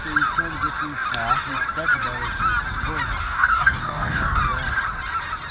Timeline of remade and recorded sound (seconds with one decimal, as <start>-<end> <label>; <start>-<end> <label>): 0.0-3.2 recorded; 3.2-4.4 remade; 4.4-5.5 recorded